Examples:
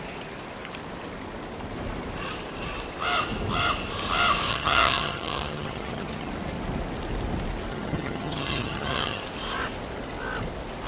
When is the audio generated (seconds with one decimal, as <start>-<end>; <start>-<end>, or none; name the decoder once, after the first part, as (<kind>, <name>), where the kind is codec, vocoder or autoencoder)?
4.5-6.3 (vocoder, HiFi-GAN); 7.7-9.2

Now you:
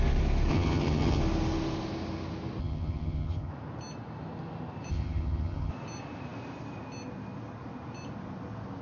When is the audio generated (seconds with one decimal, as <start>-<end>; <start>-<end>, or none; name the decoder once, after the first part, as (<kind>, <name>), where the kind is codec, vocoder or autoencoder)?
0.5-1.2 (vocoder, HiFi-GAN); 2.6-3.5; 4.9-5.7

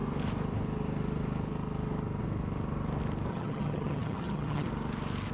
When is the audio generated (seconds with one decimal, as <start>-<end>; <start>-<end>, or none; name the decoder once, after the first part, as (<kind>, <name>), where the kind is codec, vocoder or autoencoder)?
3.3-4.7 (vocoder, HiFi-GAN)

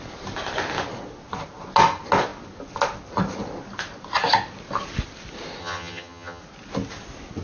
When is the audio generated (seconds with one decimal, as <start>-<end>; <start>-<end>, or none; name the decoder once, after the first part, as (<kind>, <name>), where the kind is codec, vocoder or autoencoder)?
5.6-6.4 (vocoder, HiFi-GAN)

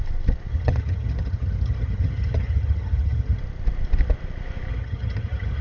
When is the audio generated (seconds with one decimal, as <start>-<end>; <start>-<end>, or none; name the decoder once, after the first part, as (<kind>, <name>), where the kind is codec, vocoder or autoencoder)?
0.5-3.4 (vocoder, HiFi-GAN); 4.7-5.6

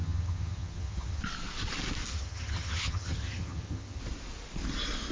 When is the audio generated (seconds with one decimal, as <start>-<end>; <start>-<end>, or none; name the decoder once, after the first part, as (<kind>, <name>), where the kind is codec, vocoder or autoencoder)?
0.0-1.2 (vocoder, HiFi-GAN); 2.1-4.0

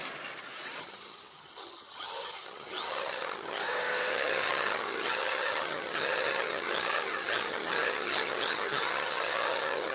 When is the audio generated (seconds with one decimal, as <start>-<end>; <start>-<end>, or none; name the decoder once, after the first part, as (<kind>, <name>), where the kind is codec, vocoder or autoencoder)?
0.8-3.6 (vocoder, HiFi-GAN); 4.1-9.9